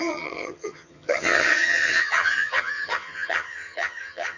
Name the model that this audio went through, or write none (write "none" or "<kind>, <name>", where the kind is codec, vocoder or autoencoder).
vocoder, HiFi-GAN